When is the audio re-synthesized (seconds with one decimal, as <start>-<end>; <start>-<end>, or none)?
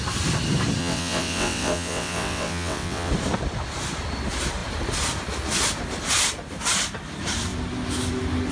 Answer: 0.8-3.1